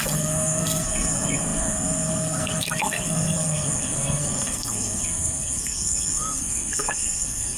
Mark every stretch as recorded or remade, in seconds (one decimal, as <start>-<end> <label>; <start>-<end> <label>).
0.0-7.6 remade